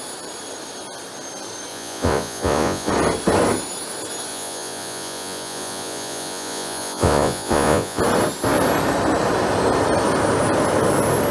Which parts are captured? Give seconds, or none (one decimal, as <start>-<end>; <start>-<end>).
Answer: 0.0-1.7; 2.9-4.3; 8.0-11.3